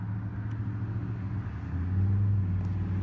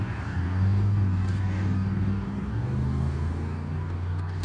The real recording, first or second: first